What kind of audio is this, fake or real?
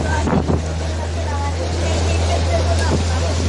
real